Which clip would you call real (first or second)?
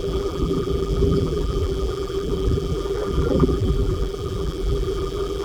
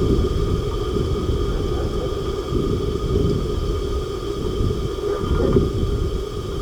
second